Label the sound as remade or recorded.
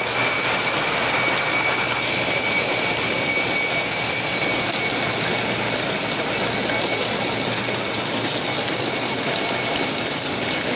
recorded